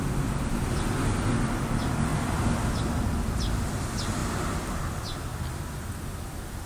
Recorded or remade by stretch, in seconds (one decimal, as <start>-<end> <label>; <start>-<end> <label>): 0.0-4.2 recorded; 4.2-4.8 remade; 4.8-6.7 recorded